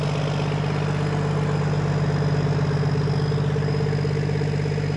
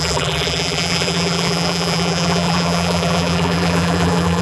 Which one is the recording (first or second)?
first